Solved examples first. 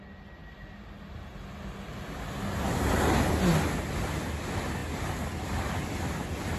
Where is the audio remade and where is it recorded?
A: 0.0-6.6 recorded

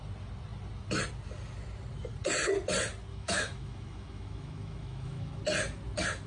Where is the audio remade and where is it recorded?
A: 0.0-3.1 recorded; 3.1-5.4 remade; 5.4-6.3 recorded

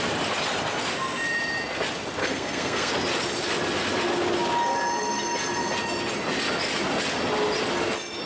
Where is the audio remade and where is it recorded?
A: 0.0-2.2 recorded; 2.2-2.9 remade; 2.9-8.3 recorded

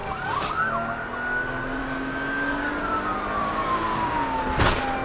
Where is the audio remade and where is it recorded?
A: 0.0-1.8 recorded; 1.8-2.7 remade; 2.7-3.4 recorded; 3.4-4.4 remade; 4.4-5.0 recorded